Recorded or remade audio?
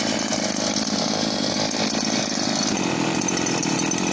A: recorded